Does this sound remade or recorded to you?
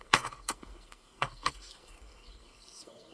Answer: remade